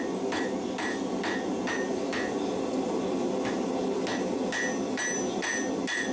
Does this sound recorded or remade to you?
recorded